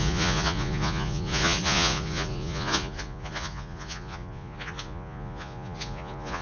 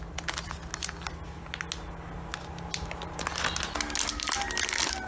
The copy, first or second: first